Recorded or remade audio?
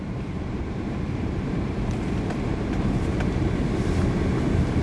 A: remade